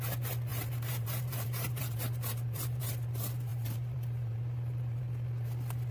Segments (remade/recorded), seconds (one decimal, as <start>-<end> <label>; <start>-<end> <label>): 0.0-0.5 recorded; 0.5-2.8 remade; 2.8-3.5 recorded; 3.5-5.0 remade; 5.0-5.9 recorded